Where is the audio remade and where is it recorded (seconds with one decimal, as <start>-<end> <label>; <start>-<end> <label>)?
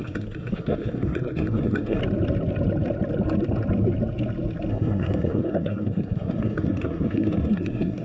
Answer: 0.0-2.0 remade; 2.0-4.7 recorded; 4.7-8.0 remade